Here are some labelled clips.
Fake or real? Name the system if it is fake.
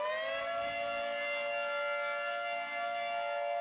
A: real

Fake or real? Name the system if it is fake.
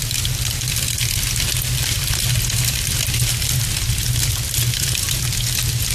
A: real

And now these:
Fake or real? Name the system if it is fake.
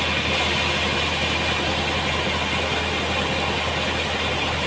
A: real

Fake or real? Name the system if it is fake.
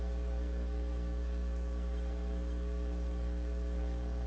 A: fake, codec, SNAC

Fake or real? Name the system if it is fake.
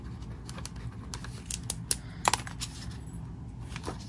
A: real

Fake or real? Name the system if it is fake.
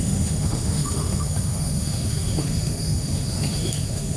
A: fake, autoencoder, DAC-VAE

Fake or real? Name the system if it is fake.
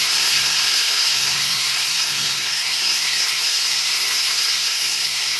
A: fake, codec, SNAC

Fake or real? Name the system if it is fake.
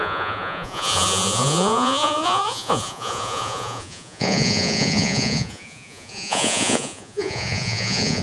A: fake, vocoder, Vocos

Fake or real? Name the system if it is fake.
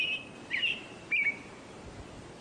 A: real